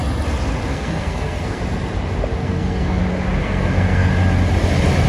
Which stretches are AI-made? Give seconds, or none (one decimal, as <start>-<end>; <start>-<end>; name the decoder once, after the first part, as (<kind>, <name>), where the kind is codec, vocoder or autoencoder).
0.7-1.6 (codec, SNAC); 2.4-3.0; 3.4-4.1